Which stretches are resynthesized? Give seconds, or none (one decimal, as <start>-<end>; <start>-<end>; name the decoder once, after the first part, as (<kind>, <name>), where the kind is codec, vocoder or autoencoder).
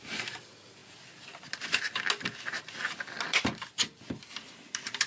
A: none